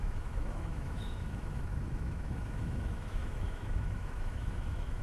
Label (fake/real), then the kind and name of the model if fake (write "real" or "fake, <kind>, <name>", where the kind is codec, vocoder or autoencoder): fake, autoencoder, DAC-VAE